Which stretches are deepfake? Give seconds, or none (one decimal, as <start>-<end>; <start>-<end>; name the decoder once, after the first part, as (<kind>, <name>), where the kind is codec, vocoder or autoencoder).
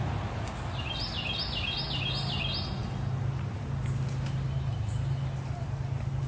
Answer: none